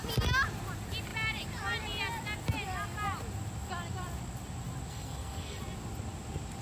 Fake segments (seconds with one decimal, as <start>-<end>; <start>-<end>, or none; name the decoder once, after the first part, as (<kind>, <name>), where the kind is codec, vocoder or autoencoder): 4.9-5.6 (codec, SNAC)